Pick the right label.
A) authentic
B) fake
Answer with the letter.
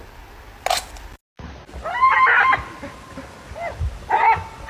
A